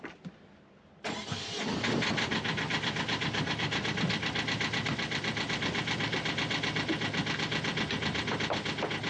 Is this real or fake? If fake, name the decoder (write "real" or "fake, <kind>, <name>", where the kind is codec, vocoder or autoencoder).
real